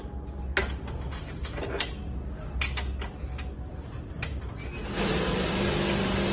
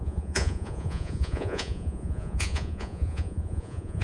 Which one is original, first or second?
first